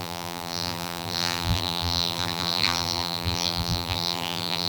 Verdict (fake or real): fake